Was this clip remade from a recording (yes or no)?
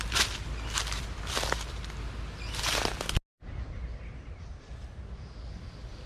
no